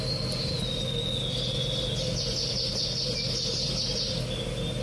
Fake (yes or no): no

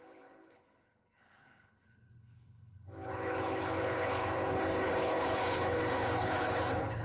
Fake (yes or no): yes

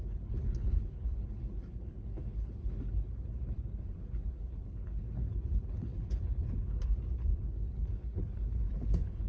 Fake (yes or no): yes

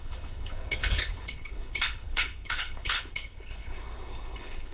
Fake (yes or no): yes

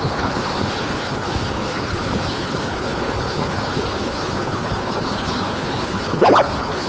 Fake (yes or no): yes